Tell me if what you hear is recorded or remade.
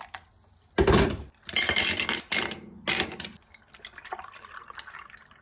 recorded